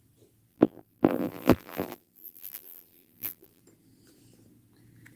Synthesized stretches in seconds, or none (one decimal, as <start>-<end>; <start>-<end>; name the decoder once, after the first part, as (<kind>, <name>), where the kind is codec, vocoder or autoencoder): 0.5-3.6 (vocoder, BigVGAN v2)